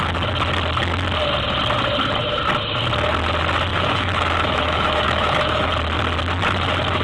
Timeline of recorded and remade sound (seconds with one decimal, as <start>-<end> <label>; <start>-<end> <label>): 0.0-3.7 recorded; 3.7-5.7 remade; 5.7-7.0 recorded